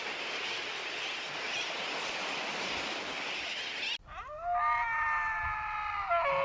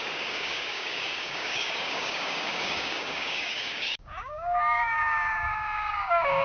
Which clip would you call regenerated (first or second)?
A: second